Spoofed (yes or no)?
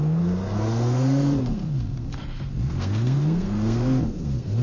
yes